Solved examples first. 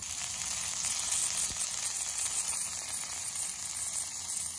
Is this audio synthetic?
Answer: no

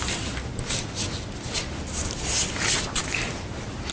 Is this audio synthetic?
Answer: no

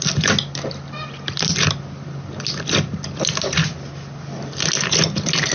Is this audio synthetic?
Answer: no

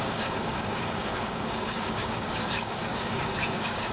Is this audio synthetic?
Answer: yes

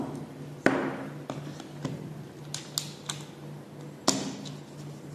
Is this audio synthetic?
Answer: no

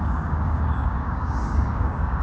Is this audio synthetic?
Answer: yes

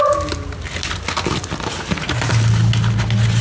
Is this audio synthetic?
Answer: no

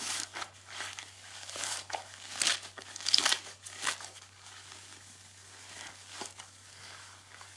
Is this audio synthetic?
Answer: yes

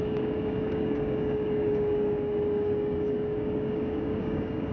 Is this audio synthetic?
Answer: yes